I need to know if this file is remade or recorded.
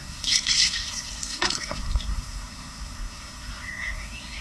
remade